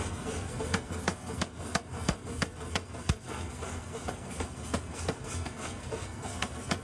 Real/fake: fake